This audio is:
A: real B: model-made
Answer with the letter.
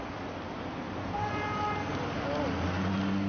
A